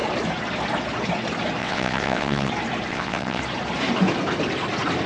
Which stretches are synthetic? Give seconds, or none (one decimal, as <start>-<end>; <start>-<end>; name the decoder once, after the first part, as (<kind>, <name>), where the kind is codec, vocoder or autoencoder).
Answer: 1.6-2.5 (vocoder, WaveNeXt); 2.9-3.4